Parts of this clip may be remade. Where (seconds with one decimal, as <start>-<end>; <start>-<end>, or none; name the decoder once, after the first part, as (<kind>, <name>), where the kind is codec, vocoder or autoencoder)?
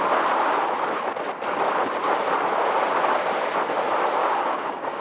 4.2-5.0 (codec, DAC)